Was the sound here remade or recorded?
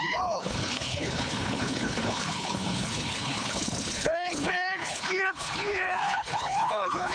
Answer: remade